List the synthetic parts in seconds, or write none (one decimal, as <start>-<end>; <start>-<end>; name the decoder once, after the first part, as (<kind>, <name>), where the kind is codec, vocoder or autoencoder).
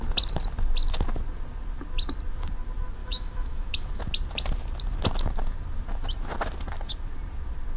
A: 3.0-4.0 (autoencoder, DAC-VAE)